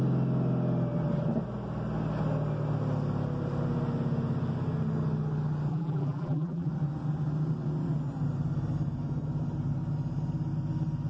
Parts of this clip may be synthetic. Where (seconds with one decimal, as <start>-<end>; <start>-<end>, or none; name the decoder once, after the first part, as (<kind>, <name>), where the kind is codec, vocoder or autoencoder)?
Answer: 5.7-6.7 (vocoder, BigVGAN v2)